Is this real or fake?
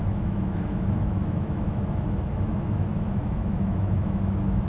fake